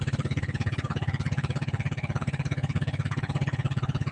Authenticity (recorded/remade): remade